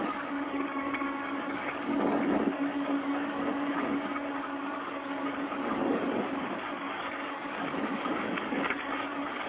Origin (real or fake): fake